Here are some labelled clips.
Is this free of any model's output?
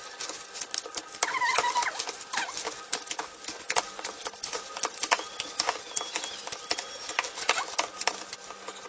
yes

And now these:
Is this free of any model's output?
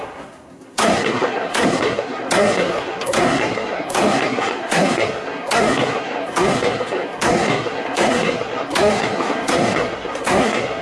no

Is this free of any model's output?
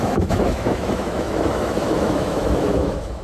no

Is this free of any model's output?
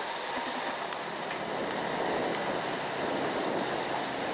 yes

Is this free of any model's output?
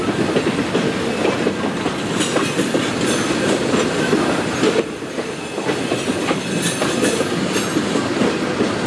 yes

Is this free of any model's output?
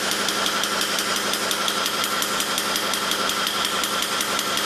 yes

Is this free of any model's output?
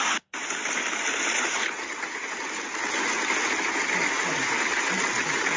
yes